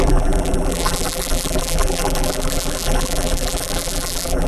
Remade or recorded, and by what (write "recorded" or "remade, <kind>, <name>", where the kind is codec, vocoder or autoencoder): remade, vocoder, BigVGAN v2